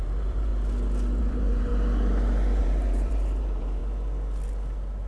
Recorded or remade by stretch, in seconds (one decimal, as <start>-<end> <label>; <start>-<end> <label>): 0.0-0.5 remade; 0.5-1.2 recorded; 1.2-1.7 remade; 1.7-2.6 recorded; 2.6-3.8 remade; 3.8-5.1 recorded